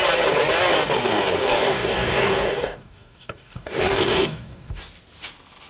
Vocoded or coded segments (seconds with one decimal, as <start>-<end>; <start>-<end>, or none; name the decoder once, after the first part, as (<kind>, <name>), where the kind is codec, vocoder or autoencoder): 1.4-4.8 (codec, DAC)